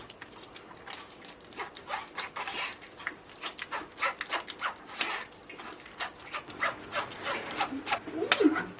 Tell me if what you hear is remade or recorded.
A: recorded